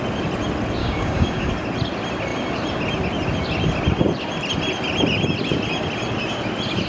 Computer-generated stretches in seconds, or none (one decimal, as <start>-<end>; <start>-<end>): 0.8-1.5